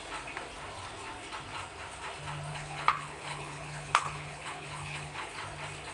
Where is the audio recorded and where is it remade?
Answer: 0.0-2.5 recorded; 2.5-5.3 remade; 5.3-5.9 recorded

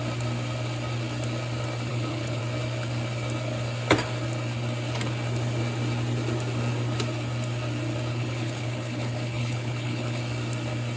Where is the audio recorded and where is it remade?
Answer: 0.0-1.9 recorded; 1.9-2.4 remade; 2.4-8.1 recorded; 8.1-10.2 remade; 10.2-11.0 recorded

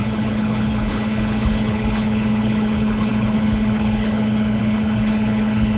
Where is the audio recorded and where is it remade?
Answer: 0.0-5.8 remade

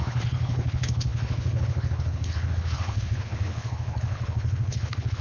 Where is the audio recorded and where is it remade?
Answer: 0.0-5.2 remade

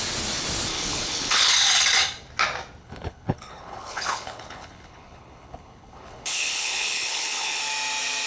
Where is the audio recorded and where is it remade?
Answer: 0.0-0.7 recorded; 0.7-1.5 remade; 1.5-2.8 recorded; 2.8-7.6 remade; 7.6-8.3 recorded